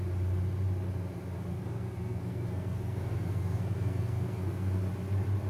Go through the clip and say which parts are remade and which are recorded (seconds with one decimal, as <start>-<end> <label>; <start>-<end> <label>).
0.0-1.5 recorded; 1.5-4.8 remade; 4.8-5.5 recorded